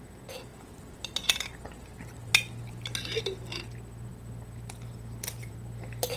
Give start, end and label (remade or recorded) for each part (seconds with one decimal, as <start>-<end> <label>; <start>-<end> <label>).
0.0-0.5 recorded; 0.5-2.3 remade; 2.3-4.1 recorded; 4.1-5.5 remade; 5.5-6.2 recorded